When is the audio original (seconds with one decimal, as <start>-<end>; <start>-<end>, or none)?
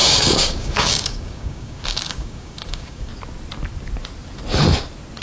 3.1-5.2